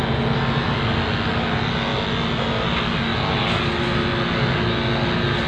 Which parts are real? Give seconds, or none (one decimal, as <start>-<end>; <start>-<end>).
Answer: 0.0-5.5